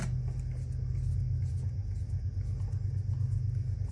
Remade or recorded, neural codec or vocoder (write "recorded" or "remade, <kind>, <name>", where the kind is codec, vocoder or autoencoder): recorded